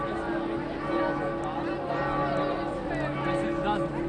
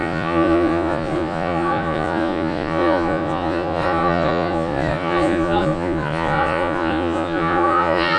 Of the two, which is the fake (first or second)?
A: second